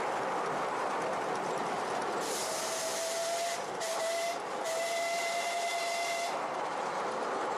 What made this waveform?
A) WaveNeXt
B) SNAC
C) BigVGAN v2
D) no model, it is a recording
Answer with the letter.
D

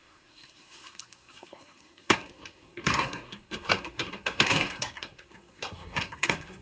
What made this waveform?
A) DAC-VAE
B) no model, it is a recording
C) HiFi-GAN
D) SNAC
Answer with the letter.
D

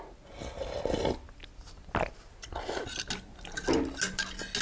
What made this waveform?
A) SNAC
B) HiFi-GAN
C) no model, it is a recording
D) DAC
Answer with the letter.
C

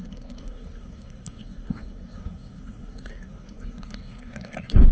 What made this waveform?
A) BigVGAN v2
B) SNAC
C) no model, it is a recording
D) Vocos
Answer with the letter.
B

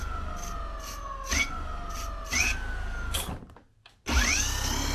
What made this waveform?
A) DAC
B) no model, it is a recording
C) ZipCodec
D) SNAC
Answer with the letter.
B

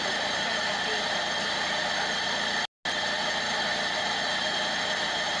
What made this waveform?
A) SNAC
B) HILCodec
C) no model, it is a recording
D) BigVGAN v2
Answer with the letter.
C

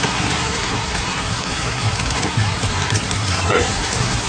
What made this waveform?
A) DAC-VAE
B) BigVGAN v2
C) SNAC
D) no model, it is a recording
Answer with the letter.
C